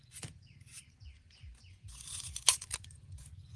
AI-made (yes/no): yes